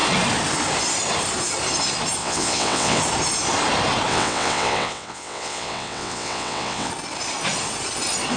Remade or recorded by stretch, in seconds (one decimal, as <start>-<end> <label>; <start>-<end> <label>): 0.0-2.2 recorded; 2.2-3.0 remade; 3.0-4.1 recorded; 4.1-6.9 remade; 6.9-8.4 recorded